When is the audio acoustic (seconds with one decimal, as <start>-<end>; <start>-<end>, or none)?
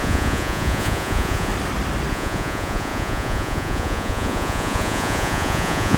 1.5-2.1